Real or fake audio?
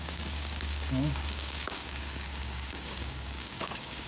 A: fake